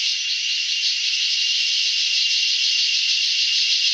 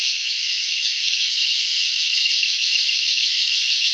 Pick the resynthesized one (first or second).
second